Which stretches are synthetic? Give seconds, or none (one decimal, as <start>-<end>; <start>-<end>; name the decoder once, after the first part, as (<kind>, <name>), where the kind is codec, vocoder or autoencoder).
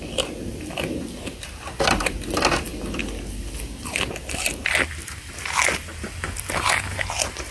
none